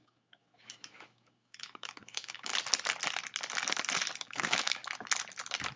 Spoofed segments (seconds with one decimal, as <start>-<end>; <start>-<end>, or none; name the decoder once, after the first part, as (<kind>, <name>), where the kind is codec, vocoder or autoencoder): 0.0-2.5 (autoencoder, DAC-VAE); 4.2-4.8